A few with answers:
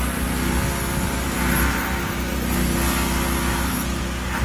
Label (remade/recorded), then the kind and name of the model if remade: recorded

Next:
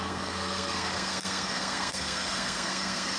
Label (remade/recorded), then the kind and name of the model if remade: remade, codec, SNAC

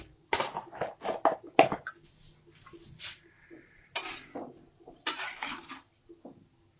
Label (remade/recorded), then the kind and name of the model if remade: recorded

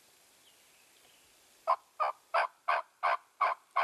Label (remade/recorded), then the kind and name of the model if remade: recorded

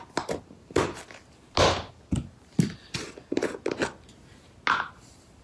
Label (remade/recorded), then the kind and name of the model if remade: recorded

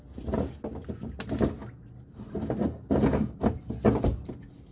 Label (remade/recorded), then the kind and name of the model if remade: recorded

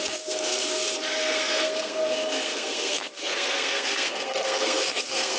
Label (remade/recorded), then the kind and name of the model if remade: remade, codec, SNAC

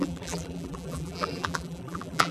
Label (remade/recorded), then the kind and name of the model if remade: remade, vocoder, BigVGAN v2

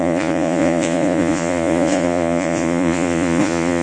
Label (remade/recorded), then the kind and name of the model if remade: remade, vocoder, Vocos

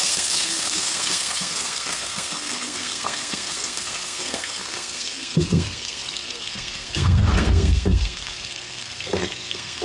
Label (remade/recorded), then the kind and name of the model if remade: remade, codec, SNAC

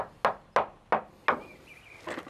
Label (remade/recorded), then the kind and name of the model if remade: recorded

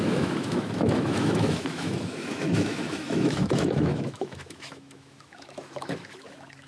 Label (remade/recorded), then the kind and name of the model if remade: remade, autoencoder, DAC-VAE